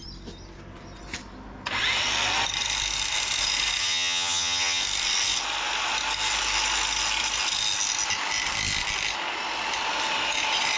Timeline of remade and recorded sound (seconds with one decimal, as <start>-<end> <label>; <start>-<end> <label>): 0.0-3.8 recorded; 3.8-4.8 remade; 4.8-10.8 recorded